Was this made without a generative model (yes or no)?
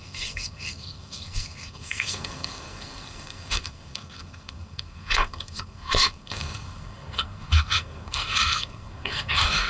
no